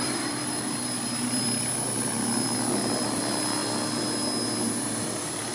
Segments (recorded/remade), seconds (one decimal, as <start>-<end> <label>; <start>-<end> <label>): 0.0-3.6 remade; 3.6-5.0 recorded; 5.0-5.5 remade